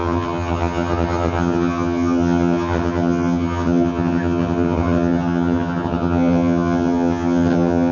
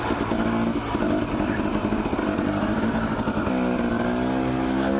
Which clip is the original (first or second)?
second